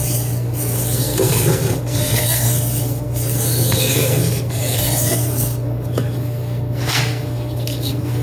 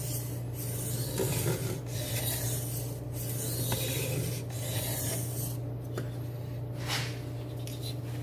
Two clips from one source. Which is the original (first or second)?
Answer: second